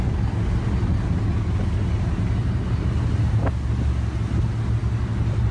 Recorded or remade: recorded